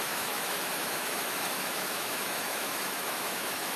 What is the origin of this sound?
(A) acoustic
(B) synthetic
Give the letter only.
B